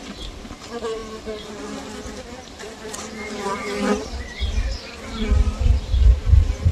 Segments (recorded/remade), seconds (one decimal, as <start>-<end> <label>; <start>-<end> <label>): 0.0-6.7 recorded